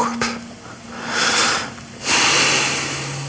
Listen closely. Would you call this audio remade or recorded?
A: recorded